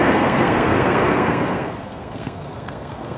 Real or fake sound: fake